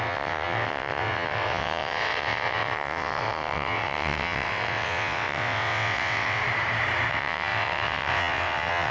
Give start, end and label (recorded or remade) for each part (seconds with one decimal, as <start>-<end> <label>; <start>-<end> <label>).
0.0-6.4 remade; 6.4-7.1 recorded; 7.1-8.9 remade